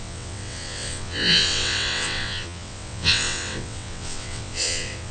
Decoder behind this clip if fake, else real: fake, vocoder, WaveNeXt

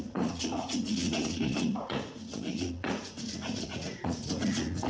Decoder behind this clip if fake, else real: fake, vocoder, Vocos